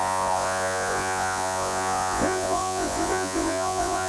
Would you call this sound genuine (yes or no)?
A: no